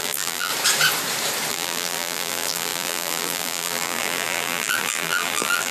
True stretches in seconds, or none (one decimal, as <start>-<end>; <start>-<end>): 0.5-1.5